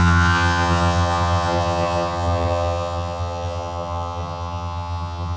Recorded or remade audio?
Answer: remade